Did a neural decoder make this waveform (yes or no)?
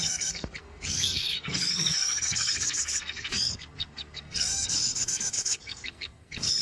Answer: yes